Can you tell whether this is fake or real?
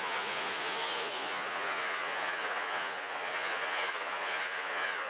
fake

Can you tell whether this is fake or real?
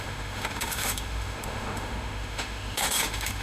fake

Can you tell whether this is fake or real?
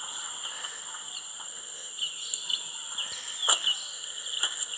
real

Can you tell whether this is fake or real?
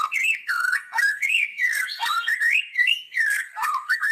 fake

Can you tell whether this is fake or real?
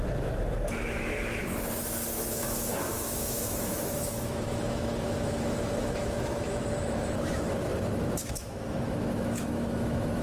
fake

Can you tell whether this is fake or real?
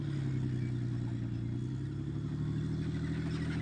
real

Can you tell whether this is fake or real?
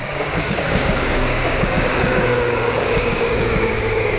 fake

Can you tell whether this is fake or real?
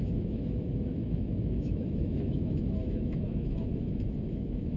fake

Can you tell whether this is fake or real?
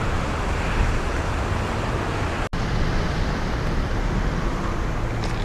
real